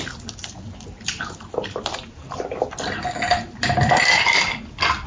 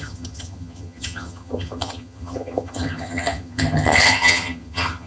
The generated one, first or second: second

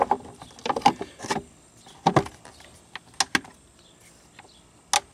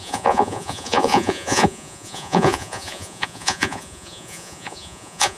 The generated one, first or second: second